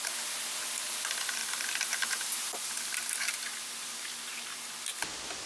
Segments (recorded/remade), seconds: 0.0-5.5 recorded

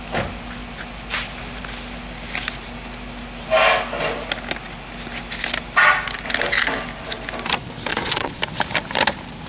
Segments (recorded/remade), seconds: 0.0-7.9 recorded; 7.9-8.4 remade; 8.4-9.5 recorded

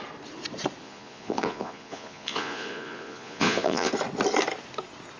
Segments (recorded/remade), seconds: 0.0-0.8 recorded; 0.8-3.9 remade; 3.9-5.2 recorded

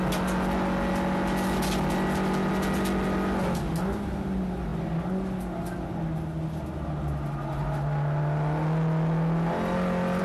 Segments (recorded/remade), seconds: 0.0-10.2 recorded

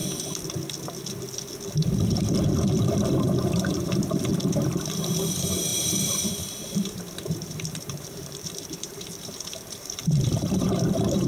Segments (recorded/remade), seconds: 0.0-3.2 recorded; 3.2-4.3 remade; 4.3-5.3 recorded; 5.3-11.3 remade